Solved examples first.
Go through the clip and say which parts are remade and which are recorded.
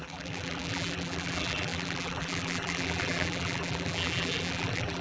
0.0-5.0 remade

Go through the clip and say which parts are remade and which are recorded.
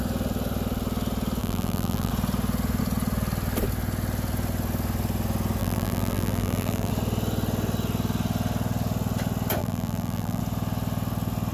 0.0-1.4 recorded; 1.4-2.1 remade; 2.1-5.6 recorded; 5.6-6.9 remade; 6.9-9.6 recorded; 9.6-10.4 remade; 10.4-11.5 recorded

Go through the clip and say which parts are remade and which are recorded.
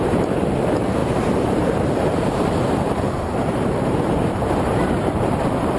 0.0-5.8 remade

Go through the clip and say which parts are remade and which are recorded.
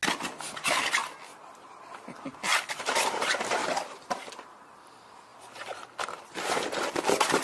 0.0-3.6 recorded; 3.6-4.7 remade; 4.7-5.3 recorded; 5.3-6.9 remade; 6.9-7.4 recorded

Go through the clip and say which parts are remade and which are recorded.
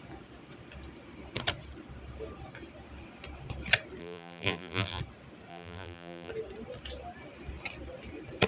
0.0-4.0 recorded; 4.0-5.0 remade; 5.0-5.5 recorded; 5.5-6.3 remade; 6.3-8.5 recorded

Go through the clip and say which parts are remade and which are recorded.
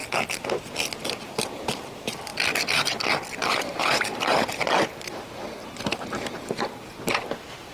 0.0-0.9 recorded; 0.9-2.3 remade; 2.3-3.5 recorded; 3.5-7.7 remade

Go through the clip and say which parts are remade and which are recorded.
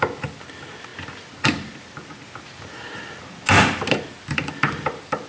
0.0-0.9 remade; 0.9-4.1 recorded; 4.1-5.3 remade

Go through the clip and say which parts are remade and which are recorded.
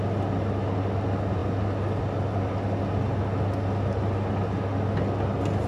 0.0-5.7 recorded